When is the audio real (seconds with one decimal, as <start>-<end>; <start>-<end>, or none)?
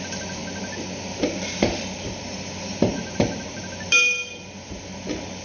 0.0-5.4